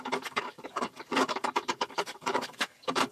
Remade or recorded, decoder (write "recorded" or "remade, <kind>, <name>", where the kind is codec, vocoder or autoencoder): remade, codec, DAC